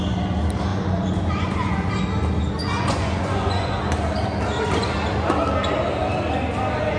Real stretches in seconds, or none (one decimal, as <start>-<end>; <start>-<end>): 0.0-0.7; 1.9-2.6; 3.8-7.0